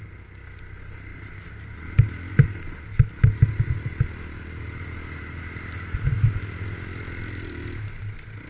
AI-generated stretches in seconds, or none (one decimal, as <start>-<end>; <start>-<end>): none